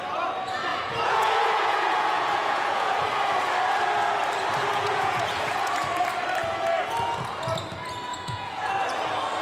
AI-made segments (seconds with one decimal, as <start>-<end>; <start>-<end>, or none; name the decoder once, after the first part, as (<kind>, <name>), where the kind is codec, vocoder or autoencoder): 0.7-3.1 (vocoder, Vocos); 4.7-5.7; 8.1-8.7